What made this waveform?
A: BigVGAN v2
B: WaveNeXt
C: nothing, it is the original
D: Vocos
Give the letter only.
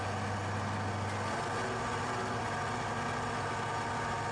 C